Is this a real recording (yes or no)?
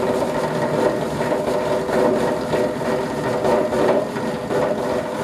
yes